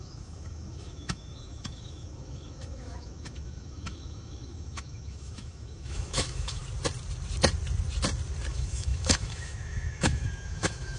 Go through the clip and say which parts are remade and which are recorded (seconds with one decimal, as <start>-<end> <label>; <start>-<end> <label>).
0.0-6.6 remade; 6.6-8.5 recorded; 8.5-11.0 remade